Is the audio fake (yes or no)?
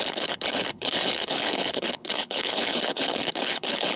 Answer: yes